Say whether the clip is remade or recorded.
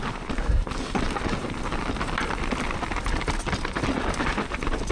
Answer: recorded